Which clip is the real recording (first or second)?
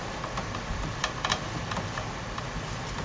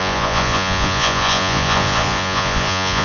first